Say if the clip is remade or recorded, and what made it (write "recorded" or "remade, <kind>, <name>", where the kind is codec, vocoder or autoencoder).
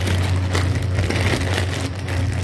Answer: recorded